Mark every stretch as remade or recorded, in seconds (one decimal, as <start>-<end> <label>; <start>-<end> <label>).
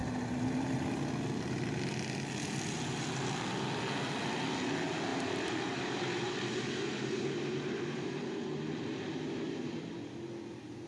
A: 0.0-5.1 recorded; 5.1-9.8 remade; 9.8-10.9 recorded